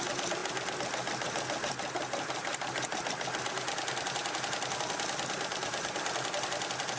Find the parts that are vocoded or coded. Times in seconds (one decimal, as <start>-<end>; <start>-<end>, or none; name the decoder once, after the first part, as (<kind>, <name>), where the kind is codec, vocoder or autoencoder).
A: none